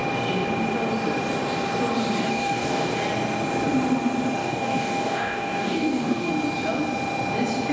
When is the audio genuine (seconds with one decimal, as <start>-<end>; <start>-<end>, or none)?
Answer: 0.0-2.3; 3.0-4.4; 6.3-7.7